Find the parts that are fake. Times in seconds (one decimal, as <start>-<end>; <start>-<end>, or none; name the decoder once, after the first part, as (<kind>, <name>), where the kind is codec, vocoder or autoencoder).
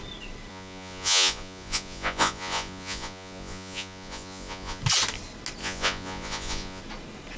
0.5-4.8 (vocoder, Vocos); 5.6-6.8